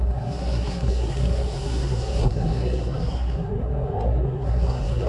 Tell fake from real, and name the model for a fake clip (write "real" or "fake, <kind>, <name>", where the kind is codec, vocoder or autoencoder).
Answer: fake, codec, SNAC